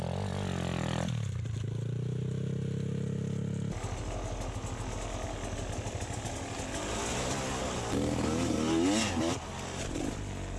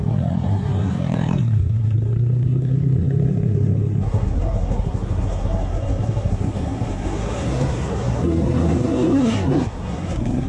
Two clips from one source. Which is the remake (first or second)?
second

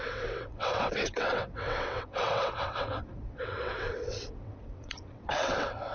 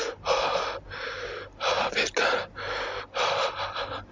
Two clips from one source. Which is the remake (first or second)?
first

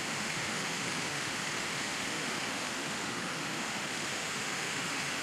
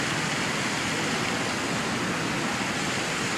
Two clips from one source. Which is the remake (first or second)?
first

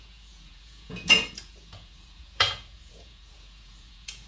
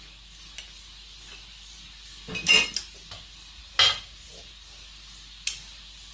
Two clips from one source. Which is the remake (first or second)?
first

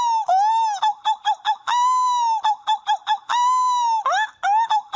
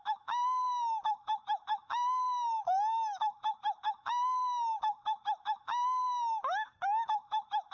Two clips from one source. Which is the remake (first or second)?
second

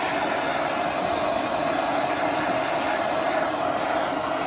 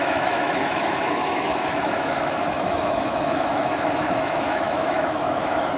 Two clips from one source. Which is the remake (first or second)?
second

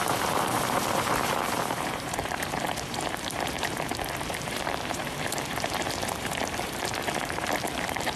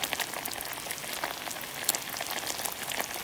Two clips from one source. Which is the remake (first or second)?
first